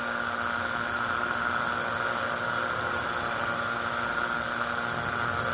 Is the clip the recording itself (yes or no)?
yes